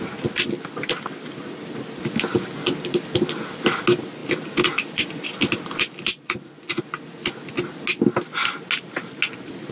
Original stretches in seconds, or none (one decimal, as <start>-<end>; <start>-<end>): 0.0-4.2; 6.8-9.7